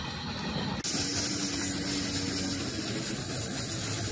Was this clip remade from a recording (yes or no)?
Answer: no